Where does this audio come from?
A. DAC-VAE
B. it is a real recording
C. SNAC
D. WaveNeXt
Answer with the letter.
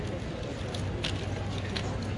B